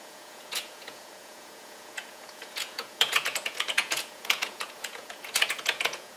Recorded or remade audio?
remade